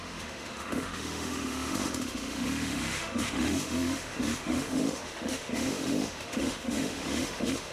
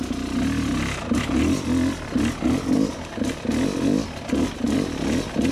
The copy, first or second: first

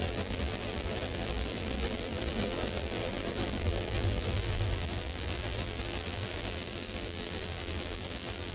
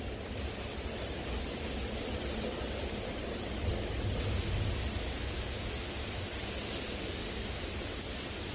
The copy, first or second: first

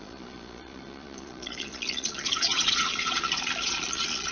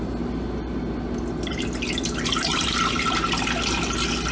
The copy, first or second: first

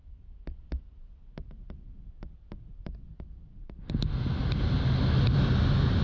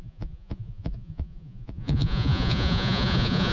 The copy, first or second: second